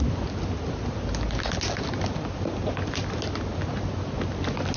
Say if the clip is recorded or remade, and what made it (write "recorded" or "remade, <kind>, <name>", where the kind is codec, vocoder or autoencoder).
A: recorded